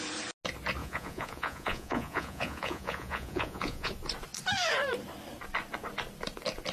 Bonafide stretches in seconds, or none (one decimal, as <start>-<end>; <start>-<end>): 0.0-0.8; 3.9-6.7